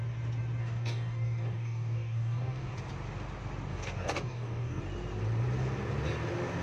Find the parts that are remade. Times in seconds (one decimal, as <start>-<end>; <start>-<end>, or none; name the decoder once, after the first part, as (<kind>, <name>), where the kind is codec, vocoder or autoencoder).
0.6-2.7 (codec, DAC); 3.7-4.8